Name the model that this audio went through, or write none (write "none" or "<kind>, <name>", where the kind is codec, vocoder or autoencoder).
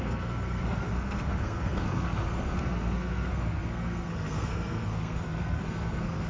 codec, SNAC